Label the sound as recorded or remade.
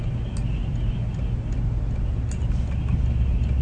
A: recorded